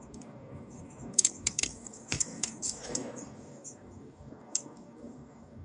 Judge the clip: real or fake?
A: fake